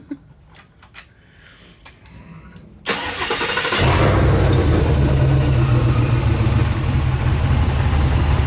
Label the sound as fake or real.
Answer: real